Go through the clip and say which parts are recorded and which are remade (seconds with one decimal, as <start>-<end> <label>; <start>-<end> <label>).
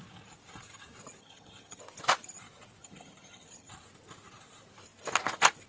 0.0-1.2 recorded; 1.2-1.8 remade; 1.8-2.8 recorded; 2.8-3.7 remade; 3.7-5.7 recorded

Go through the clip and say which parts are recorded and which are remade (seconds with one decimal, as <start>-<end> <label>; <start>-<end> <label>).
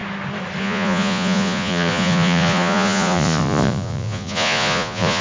0.0-0.6 recorded; 0.6-5.2 remade